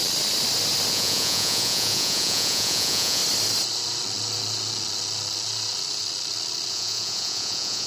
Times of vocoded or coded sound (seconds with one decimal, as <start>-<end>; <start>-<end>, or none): 0.9-3.2; 6.7-7.9